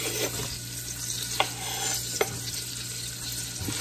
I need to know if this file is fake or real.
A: real